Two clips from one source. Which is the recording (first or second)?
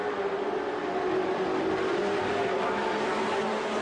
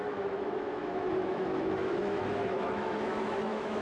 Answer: first